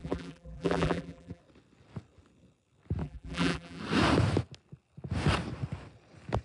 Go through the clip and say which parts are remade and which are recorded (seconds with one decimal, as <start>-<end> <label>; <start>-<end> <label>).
0.0-1.4 remade; 1.4-3.0 recorded; 3.0-3.8 remade; 3.8-6.4 recorded